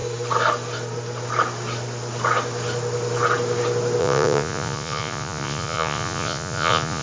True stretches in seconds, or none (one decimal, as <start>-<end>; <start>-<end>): 0.0-4.0